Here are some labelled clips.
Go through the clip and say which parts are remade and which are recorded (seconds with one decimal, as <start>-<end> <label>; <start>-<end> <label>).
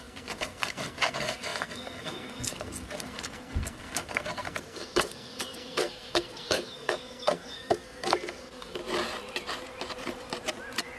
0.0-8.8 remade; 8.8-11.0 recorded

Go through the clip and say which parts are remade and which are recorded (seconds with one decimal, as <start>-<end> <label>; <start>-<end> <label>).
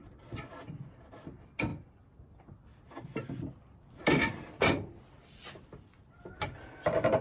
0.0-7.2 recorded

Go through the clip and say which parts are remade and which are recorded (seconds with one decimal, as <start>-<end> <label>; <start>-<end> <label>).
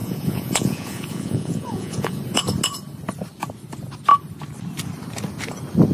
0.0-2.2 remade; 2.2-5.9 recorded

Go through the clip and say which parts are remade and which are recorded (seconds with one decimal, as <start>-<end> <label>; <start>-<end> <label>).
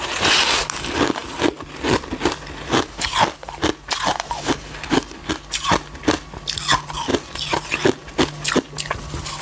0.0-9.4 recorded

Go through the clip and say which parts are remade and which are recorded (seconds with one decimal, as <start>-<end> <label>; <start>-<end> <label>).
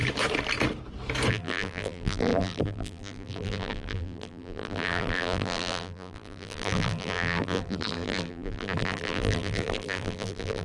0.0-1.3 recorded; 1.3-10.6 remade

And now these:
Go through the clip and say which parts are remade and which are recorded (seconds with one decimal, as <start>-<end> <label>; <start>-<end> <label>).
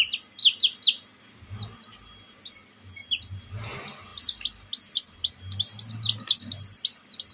0.0-7.3 recorded